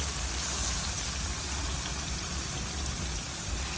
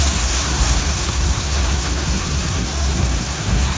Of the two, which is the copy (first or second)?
second